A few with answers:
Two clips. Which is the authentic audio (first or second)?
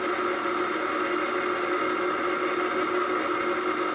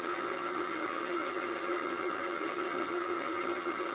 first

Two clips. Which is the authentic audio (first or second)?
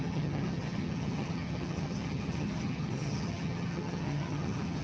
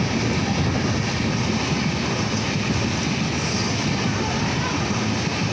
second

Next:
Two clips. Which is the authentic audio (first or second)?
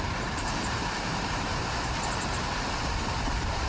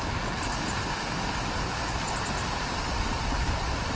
second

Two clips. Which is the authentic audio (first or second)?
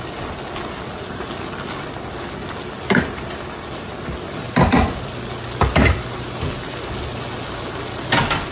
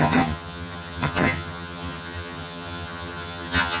first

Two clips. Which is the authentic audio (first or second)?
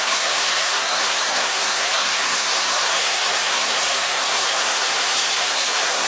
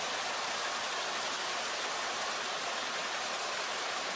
second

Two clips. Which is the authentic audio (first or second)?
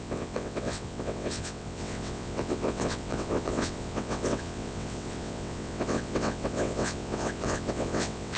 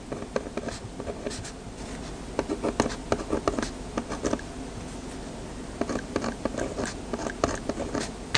second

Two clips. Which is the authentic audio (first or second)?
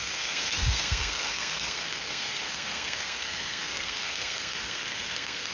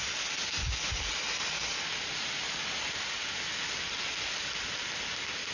second